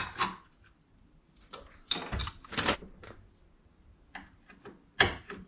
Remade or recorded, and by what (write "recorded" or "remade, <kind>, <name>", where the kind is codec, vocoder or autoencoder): recorded